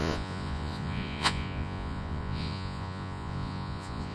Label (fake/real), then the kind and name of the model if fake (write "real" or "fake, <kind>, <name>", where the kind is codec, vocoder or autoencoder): fake, vocoder, Vocos